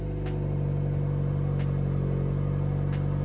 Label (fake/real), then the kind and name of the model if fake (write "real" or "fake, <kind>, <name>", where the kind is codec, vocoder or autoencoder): real